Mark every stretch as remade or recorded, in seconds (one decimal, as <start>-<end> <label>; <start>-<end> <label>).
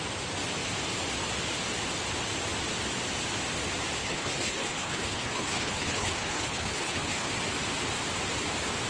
0.0-4.0 recorded; 4.0-7.3 remade; 7.3-8.9 recorded